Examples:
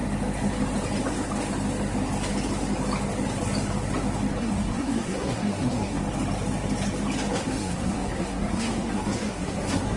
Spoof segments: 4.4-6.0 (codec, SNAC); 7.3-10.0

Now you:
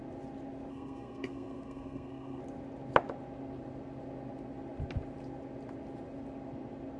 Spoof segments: 0.7-2.4 (codec, SNAC)

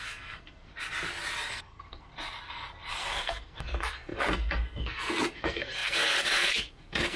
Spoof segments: 0.0-0.7 (codec, SNAC); 1.5-2.1; 2.9-7.2